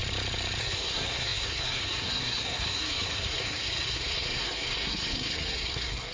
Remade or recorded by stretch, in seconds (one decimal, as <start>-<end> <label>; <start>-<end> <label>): 0.0-0.6 recorded; 0.6-6.1 remade